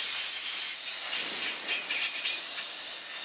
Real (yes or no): yes